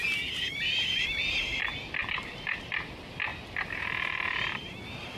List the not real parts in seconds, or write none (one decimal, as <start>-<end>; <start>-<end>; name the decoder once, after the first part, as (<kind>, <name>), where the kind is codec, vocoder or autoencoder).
2.0-2.9 (vocoder, BigVGAN v2); 3.3-4.7